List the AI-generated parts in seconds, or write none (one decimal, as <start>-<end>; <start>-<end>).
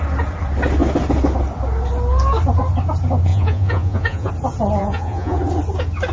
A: 3.3-4.3; 4.8-5.4